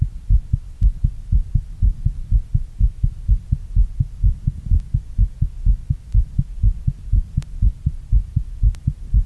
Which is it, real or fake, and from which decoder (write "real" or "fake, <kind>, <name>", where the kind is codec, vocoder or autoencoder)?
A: real